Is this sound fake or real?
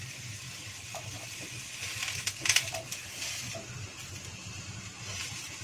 real